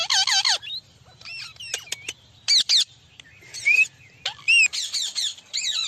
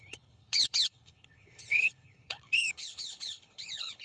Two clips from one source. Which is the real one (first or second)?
first